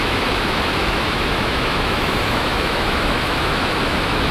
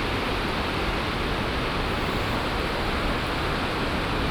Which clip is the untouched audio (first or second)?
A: second